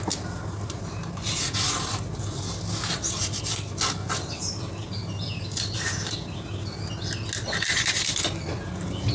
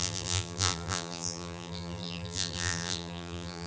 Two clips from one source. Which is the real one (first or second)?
first